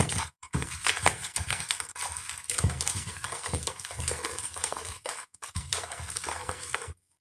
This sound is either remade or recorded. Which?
remade